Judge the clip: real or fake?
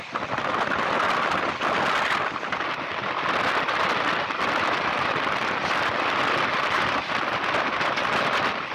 real